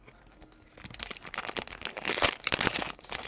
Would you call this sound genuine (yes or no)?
yes